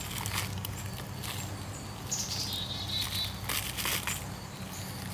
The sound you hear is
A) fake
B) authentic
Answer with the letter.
B